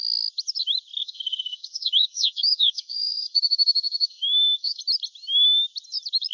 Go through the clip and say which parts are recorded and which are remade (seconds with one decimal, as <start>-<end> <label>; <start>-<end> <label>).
0.0-1.0 recorded; 1.0-4.8 remade; 4.8-6.3 recorded